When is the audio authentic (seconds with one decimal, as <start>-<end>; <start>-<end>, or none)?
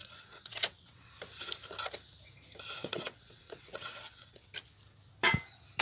1.1-2.8; 4.5-5.8